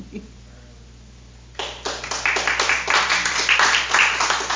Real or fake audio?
real